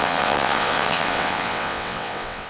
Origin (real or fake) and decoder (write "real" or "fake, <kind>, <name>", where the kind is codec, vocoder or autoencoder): fake, vocoder, WaveNeXt